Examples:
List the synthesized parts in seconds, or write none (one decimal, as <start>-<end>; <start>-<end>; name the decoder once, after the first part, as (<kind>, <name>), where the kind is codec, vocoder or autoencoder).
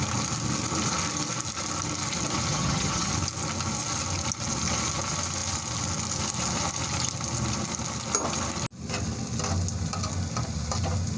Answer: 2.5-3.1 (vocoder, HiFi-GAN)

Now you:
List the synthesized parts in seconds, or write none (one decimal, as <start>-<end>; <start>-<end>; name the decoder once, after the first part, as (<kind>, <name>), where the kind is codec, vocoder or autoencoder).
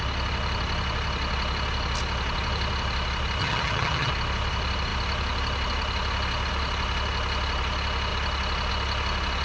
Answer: 3.4-4.1 (vocoder, HiFi-GAN)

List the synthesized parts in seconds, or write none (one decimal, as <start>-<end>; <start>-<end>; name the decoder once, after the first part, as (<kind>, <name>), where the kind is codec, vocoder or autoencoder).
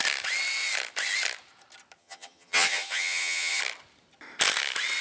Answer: 2.0-3.6 (vocoder, HiFi-GAN)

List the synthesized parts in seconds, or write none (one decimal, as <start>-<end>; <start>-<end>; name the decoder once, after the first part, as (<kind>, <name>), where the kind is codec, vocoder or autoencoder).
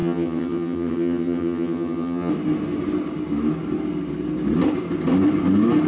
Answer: 0.0-2.3 (vocoder, HiFi-GAN)